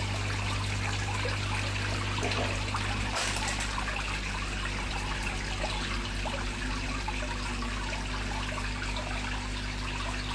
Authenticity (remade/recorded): recorded